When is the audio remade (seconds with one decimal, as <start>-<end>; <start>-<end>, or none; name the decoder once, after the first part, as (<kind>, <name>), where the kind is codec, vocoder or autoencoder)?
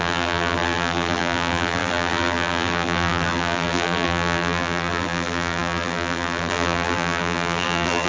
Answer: 0.0-8.1 (vocoder, BigVGAN v2)